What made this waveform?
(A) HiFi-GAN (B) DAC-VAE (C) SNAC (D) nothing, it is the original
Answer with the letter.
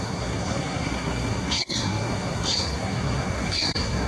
C